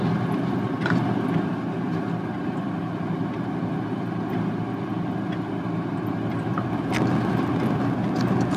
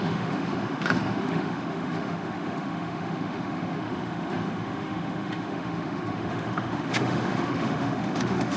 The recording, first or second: first